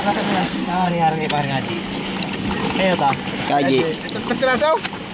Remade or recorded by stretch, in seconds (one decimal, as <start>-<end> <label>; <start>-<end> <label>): 0.0-0.4 recorded; 0.4-0.9 remade; 0.9-5.1 recorded

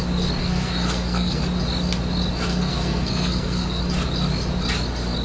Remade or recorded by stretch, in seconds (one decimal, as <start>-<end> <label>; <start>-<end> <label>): 0.0-0.4 recorded; 0.4-1.4 remade; 1.4-2.5 recorded; 2.5-3.8 remade; 3.8-5.2 recorded

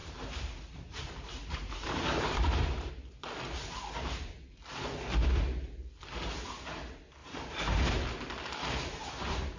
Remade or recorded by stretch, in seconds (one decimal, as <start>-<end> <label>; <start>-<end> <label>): 0.0-2.9 remade; 2.9-7.2 recorded; 7.2-7.9 remade; 7.9-9.6 recorded

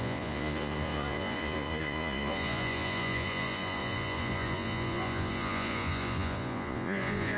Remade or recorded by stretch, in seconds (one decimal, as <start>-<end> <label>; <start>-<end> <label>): 0.0-7.4 remade

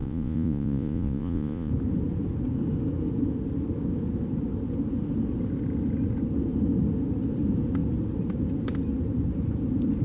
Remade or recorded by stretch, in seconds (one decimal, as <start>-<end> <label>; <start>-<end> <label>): 0.0-1.7 remade; 1.7-10.0 recorded